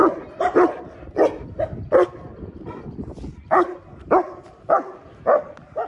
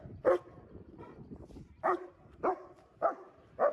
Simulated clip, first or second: second